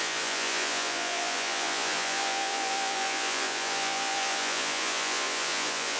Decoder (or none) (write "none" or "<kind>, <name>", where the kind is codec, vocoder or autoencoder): vocoder, Vocos